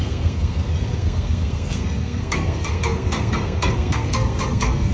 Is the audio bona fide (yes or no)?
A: no